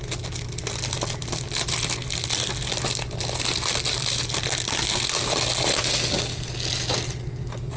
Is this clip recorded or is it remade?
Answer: recorded